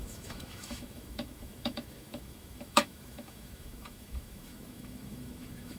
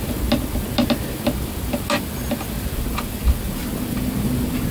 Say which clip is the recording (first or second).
second